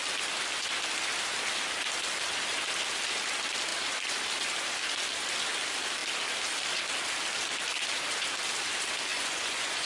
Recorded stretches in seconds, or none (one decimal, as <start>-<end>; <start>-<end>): 0.0-9.1